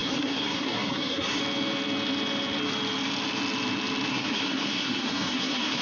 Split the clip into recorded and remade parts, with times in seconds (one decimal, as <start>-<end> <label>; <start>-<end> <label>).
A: 0.0-1.4 remade; 1.4-4.1 recorded; 4.1-5.8 remade